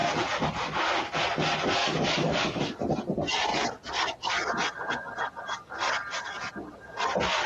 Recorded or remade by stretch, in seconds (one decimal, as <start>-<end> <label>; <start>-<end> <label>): 0.0-1.8 recorded; 1.8-2.6 remade; 2.6-7.5 recorded